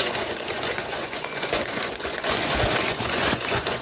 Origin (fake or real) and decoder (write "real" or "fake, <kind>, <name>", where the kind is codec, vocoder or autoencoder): fake, vocoder, Vocos